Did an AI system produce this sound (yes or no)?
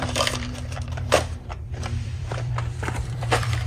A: yes